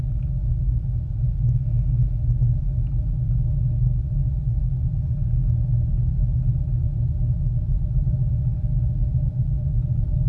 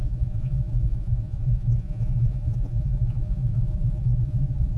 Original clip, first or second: first